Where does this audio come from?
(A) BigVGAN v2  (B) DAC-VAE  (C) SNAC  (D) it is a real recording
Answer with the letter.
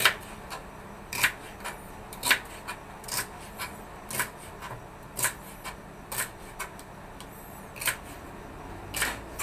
D